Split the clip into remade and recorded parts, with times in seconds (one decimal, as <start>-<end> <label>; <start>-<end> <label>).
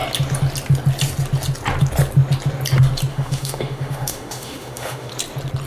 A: 0.0-3.1 recorded; 3.1-5.1 remade; 5.1-5.7 recorded